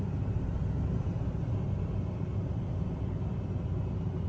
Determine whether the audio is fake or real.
real